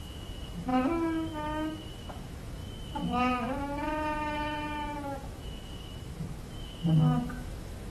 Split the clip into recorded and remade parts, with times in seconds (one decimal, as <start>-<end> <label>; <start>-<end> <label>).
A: 0.0-7.9 remade